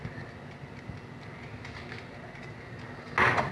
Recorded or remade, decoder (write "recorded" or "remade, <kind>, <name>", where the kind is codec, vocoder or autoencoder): recorded